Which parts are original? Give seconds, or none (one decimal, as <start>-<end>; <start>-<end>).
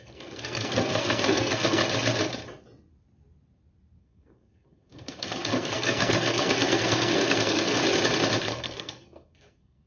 1.8-4.0; 7.8-8.4